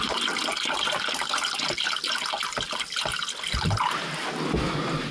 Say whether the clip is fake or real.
real